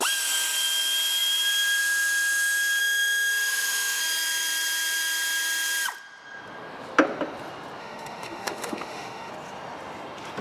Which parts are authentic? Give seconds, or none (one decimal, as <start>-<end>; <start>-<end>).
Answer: 0.0-2.8; 4.0-7.8; 9.3-10.4